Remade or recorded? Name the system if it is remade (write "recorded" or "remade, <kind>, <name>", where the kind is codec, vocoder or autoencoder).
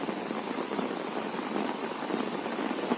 remade, vocoder, BigVGAN v2